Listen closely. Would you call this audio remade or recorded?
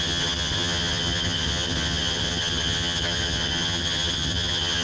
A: remade